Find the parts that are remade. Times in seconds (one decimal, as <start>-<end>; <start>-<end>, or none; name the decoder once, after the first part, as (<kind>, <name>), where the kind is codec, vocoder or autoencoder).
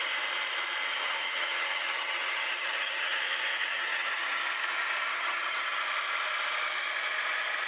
0.9-3.2 (vocoder, HiFi-GAN); 3.7-4.4; 5.1-5.8